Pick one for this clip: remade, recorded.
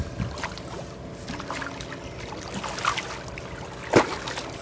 recorded